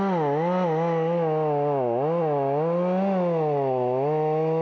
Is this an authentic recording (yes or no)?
yes